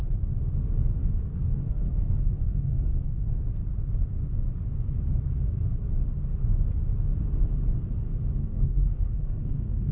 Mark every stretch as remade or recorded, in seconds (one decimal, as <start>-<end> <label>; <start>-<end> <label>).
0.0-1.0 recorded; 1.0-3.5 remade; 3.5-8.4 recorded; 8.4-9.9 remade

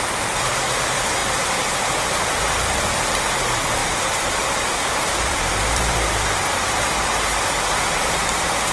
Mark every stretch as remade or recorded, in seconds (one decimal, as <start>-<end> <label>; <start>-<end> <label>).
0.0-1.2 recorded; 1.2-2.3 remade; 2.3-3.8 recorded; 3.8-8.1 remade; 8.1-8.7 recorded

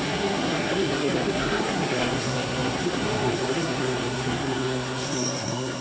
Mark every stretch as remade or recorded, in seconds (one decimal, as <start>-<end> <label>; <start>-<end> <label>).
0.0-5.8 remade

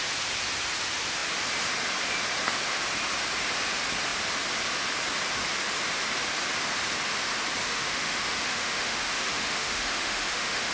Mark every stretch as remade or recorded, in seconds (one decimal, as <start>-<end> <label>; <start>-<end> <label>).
0.0-7.6 recorded; 7.6-10.7 remade

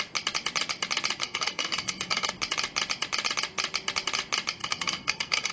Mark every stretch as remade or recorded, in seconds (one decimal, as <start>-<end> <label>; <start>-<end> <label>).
0.0-1.2 recorded; 1.2-2.3 remade; 2.3-4.6 recorded; 4.6-5.5 remade

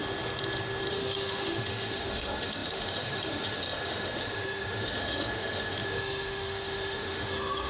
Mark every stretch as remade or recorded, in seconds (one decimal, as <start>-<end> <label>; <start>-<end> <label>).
0.0-0.9 recorded; 0.9-7.7 remade

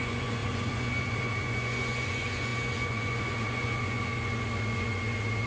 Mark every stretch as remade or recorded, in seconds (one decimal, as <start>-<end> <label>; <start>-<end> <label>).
0.0-5.5 remade

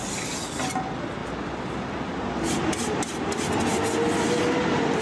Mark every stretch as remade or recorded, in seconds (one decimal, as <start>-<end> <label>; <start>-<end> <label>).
0.0-5.0 recorded